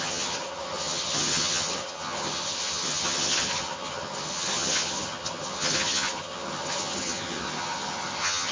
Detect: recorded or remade remade